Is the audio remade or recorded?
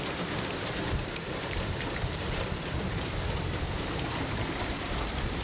remade